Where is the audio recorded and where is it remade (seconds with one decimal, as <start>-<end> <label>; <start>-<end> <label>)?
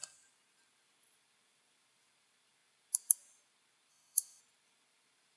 0.0-3.9 recorded; 3.9-4.4 remade; 4.4-5.4 recorded